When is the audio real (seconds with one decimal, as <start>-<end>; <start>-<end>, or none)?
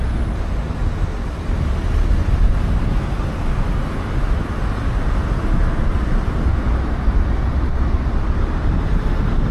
0.0-9.5